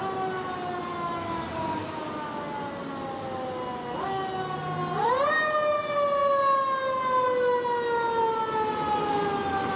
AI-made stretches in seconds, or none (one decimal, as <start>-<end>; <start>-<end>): none

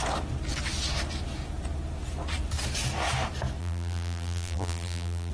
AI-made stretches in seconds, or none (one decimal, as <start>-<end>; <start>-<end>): 3.6-5.3

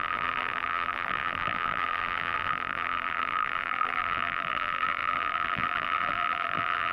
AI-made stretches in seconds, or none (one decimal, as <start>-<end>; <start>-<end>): 0.0-6.9

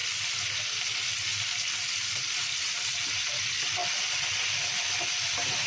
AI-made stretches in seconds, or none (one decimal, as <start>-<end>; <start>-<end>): 0.0-0.6; 1.3-3.2

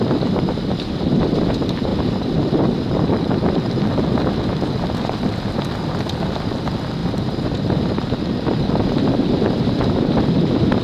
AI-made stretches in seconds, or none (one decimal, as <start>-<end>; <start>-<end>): 7.0-8.2

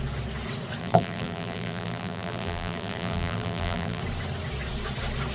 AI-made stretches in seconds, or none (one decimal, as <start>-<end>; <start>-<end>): 0.8-4.0

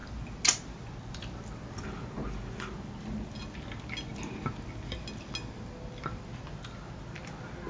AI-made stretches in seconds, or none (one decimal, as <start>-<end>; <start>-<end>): none

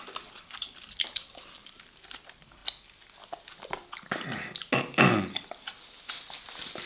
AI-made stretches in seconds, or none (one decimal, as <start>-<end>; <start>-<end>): 0.0-2.6